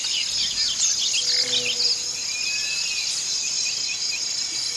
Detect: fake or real real